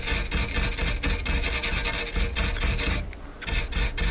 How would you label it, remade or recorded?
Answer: recorded